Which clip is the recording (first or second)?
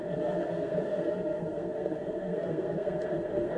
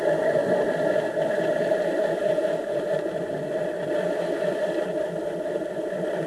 second